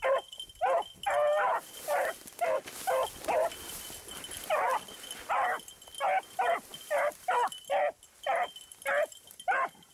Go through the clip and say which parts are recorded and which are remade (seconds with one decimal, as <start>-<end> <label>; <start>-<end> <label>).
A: 0.0-6.7 recorded; 6.7-9.9 remade